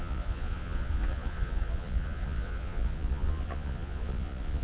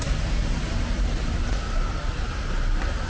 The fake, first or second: first